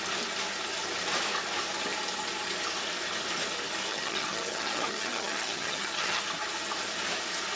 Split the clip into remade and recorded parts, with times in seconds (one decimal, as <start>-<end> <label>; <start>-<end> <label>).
0.0-3.9 recorded; 3.9-6.2 remade; 6.2-7.6 recorded